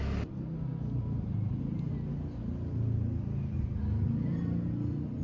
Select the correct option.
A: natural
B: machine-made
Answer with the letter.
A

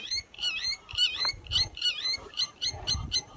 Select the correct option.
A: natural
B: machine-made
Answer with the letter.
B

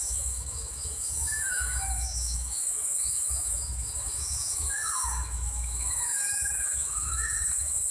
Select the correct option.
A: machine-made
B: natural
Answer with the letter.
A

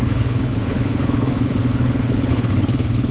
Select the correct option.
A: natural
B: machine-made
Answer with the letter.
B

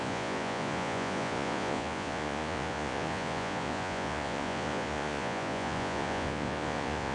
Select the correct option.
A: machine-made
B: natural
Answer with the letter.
A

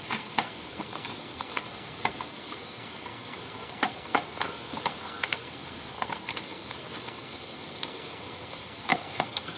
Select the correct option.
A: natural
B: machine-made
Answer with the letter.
B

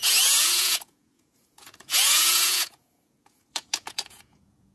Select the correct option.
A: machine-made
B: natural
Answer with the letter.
A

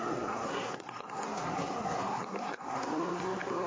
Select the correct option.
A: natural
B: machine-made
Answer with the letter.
B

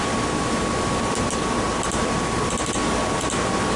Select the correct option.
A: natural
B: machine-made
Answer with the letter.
A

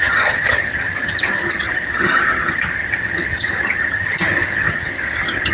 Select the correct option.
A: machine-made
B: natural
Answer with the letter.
A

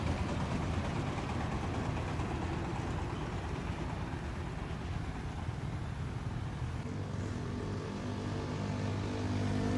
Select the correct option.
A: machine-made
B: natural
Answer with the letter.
B